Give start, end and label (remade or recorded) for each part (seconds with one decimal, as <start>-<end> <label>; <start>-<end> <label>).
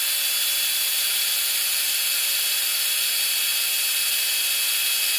0.0-0.9 recorded; 0.9-3.1 remade; 3.1-5.2 recorded